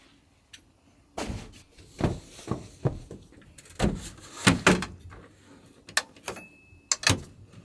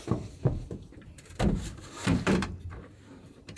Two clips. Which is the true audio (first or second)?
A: first